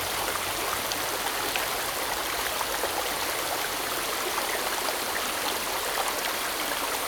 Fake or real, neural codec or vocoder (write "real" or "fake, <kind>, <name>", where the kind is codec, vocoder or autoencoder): real